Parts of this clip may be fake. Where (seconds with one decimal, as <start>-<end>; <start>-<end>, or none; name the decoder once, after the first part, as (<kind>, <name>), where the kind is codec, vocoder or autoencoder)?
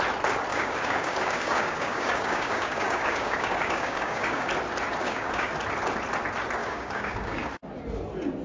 0.5-4.5 (codec, DAC); 5.0-5.5; 6.6-7.5